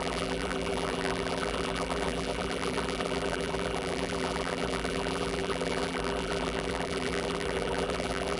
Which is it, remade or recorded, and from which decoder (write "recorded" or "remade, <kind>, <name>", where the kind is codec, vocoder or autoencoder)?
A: remade, vocoder, BigVGAN v2